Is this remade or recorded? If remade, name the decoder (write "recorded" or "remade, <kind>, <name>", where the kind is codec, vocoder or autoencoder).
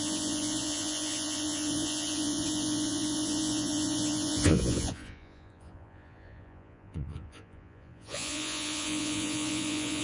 remade, vocoder, Vocos